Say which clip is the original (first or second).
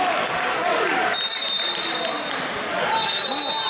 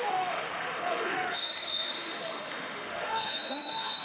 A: first